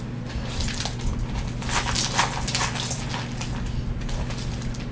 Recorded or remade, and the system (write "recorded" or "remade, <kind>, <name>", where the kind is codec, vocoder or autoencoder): recorded